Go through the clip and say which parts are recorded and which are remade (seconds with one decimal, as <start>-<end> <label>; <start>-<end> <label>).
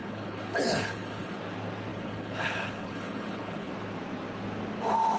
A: 0.0-1.4 remade; 1.4-1.9 recorded; 1.9-3.7 remade; 3.7-5.2 recorded